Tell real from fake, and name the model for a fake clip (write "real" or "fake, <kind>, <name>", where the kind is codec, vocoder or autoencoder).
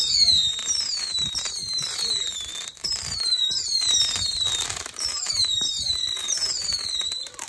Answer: fake, vocoder, BigVGAN v2